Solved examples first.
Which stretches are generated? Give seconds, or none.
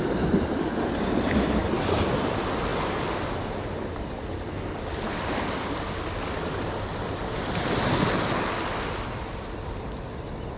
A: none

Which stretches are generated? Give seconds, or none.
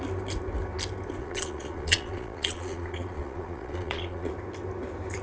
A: 1.2-4.3 (vocoder, Vocos)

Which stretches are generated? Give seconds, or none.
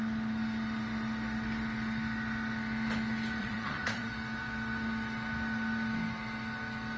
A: 3.4-4.1 (vocoder, Vocos)